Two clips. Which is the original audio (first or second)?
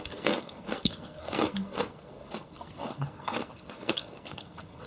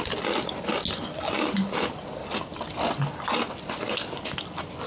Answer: second